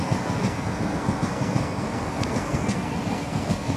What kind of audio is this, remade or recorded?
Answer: remade